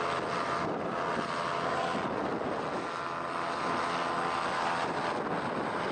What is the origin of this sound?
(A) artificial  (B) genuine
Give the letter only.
B